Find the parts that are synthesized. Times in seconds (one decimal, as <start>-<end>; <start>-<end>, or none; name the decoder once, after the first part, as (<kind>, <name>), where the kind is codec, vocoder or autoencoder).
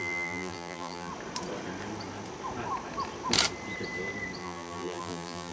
0.0-1.1 (vocoder, BigVGAN v2); 4.4-5.5